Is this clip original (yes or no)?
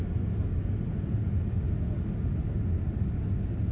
yes